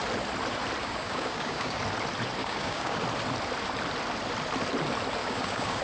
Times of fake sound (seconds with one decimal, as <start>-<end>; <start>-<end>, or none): 0.8-1.8; 2.4-3.0; 5.2-5.8